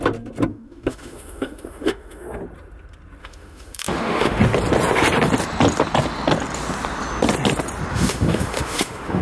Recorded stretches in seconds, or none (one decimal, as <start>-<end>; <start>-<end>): 0.0-0.5; 2.4-3.2; 4.4-7.9